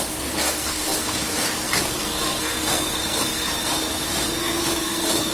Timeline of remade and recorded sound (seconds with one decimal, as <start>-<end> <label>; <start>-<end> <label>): 0.0-5.3 remade